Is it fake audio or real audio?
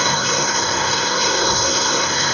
fake